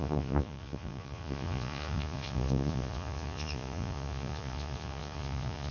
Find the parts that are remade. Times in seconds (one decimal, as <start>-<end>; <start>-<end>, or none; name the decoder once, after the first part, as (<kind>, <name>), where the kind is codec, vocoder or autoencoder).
0.0-5.7 (vocoder, Vocos)